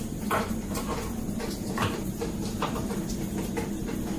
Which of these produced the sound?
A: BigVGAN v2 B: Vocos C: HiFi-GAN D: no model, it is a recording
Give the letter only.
A